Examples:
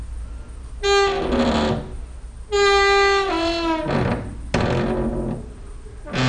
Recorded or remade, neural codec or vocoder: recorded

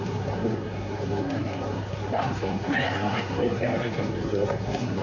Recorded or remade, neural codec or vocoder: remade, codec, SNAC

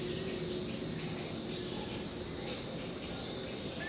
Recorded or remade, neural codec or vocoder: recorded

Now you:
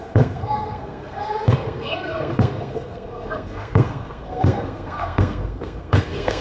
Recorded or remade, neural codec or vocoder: remade, codec, SNAC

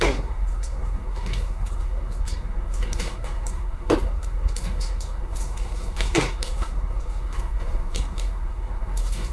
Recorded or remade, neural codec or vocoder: remade, codec, SNAC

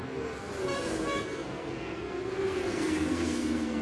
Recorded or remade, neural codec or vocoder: remade, codec, SNAC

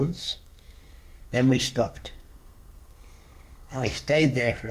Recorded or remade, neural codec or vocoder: remade, codec, SNAC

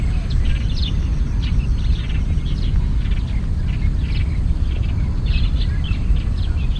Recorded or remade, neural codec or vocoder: recorded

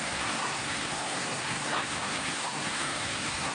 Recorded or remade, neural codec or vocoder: remade, codec, SNAC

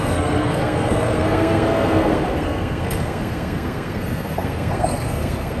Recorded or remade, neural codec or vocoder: remade, codec, SNAC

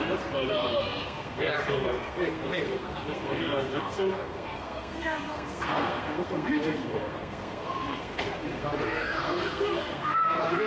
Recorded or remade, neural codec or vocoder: remade, codec, SNAC